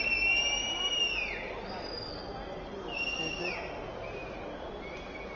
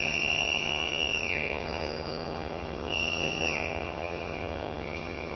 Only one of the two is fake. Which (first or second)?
second